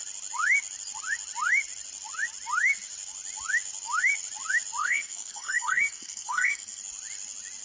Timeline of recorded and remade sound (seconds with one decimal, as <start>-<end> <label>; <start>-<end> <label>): 0.0-4.8 recorded; 4.8-6.8 remade; 6.8-7.6 recorded